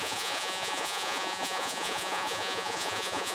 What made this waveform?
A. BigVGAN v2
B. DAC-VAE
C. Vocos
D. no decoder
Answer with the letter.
C